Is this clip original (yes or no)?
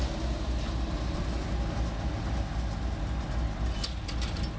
yes